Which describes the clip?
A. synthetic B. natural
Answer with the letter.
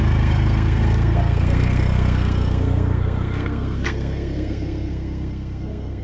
A